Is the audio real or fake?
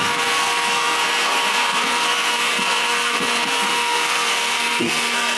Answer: fake